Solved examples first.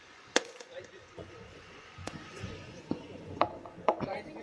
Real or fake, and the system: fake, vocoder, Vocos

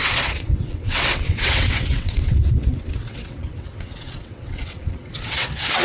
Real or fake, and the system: fake, vocoder, WaveNeXt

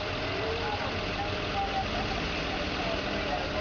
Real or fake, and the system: real